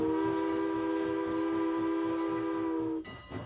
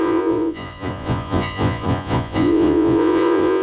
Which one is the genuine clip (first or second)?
first